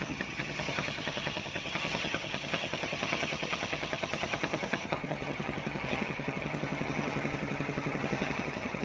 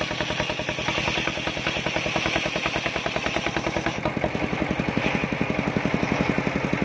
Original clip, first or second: second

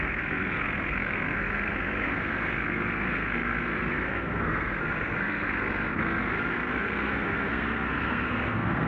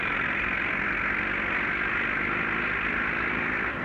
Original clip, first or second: second